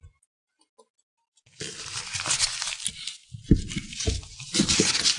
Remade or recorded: recorded